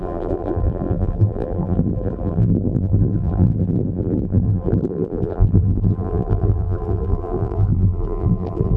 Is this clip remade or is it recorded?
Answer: remade